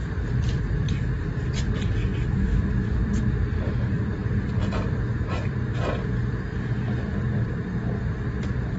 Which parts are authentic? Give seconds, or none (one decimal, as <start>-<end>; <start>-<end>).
7.4-8.0